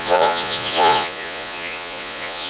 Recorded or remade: remade